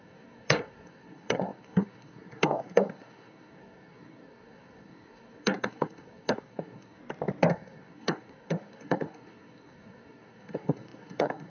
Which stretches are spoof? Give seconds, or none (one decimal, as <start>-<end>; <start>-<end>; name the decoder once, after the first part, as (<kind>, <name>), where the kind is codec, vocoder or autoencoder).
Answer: 0.0-7.0 (codec, SNAC); 7.5-11.5